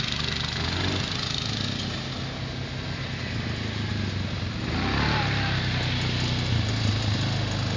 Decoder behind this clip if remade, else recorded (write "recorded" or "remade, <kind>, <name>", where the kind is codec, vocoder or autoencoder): recorded